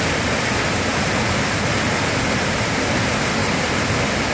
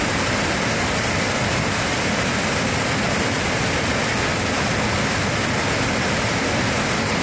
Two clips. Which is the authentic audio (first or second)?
second